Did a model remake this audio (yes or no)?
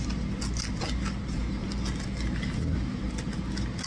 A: no